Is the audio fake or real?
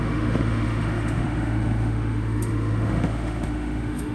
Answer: fake